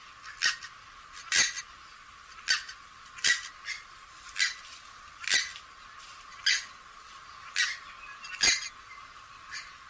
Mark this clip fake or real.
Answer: real